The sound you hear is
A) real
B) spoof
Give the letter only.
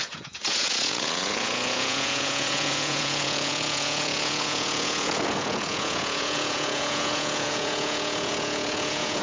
B